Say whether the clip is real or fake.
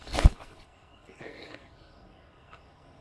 fake